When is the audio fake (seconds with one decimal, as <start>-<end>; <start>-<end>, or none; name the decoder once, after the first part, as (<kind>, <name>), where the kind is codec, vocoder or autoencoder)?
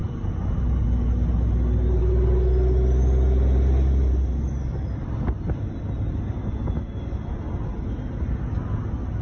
none